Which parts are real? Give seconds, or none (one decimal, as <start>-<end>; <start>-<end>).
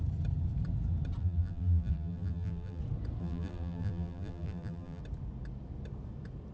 0.0-1.2; 2.8-3.2; 5.0-6.5